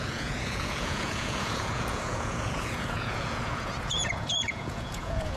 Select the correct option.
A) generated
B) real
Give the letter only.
A